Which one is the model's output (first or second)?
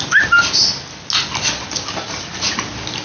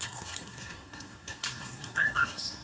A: second